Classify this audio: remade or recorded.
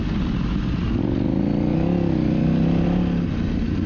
recorded